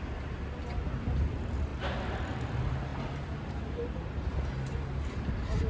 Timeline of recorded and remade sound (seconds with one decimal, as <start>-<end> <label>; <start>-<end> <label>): 0.0-5.7 recorded